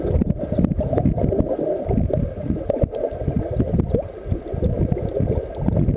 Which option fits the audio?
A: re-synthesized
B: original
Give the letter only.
B